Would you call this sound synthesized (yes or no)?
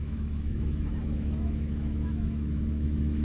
yes